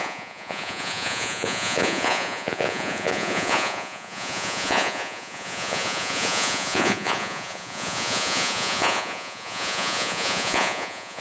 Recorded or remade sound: remade